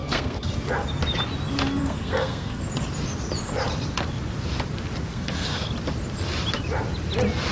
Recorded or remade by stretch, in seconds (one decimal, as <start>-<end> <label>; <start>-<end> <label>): 0.0-0.5 remade; 0.5-1.8 recorded; 1.8-2.6 remade; 2.6-5.1 recorded; 5.1-5.7 remade; 5.7-7.5 recorded